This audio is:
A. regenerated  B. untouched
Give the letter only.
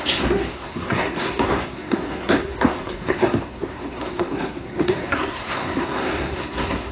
A